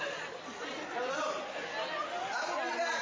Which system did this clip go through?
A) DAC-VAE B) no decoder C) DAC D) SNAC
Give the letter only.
B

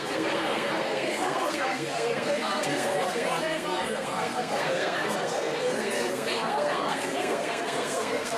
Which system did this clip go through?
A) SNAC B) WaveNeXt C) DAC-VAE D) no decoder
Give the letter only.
A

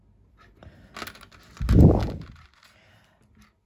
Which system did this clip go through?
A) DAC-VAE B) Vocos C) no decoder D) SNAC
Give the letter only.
C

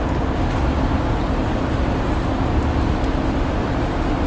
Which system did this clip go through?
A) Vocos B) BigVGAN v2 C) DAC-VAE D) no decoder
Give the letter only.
D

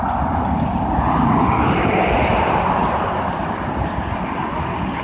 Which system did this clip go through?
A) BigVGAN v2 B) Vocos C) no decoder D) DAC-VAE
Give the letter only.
C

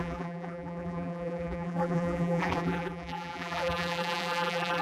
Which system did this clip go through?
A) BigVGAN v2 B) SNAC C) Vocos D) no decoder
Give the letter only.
A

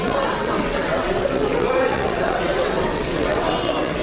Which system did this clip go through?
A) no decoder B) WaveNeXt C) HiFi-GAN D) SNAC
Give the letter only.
B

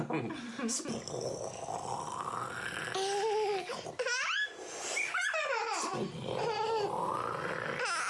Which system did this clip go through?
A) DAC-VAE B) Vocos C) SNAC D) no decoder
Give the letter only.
D